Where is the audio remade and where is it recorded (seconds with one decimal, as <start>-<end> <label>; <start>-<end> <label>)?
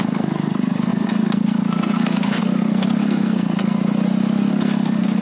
0.0-3.8 remade; 3.8-4.5 recorded; 4.5-5.2 remade